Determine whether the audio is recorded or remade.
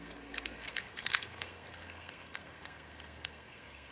remade